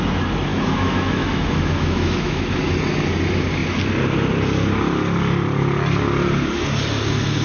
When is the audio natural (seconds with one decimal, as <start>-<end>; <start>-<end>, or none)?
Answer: 0.0-0.5; 2.6-7.4